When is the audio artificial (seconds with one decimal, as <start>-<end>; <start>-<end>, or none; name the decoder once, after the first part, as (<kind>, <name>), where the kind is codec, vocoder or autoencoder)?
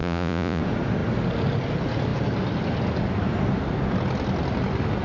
0.0-0.6 (vocoder, Vocos)